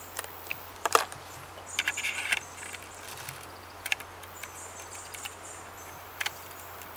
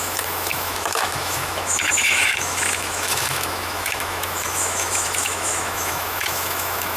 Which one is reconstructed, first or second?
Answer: second